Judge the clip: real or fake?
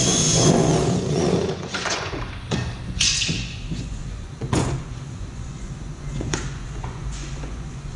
fake